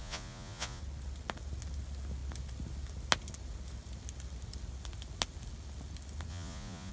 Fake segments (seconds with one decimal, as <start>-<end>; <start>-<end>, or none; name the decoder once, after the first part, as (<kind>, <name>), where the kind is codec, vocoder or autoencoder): 0.0-0.8 (vocoder, Vocos); 6.3-6.9